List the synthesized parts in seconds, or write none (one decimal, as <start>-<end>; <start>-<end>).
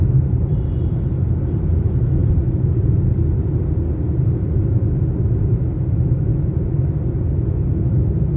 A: 2.2-3.0